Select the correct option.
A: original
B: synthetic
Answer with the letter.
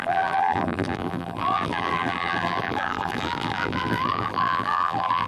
B